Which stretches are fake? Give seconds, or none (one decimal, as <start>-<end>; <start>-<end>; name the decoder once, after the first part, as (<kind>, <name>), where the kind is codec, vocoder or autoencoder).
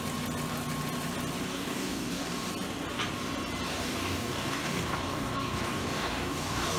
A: 1.5-2.5 (codec, DAC); 3.7-6.8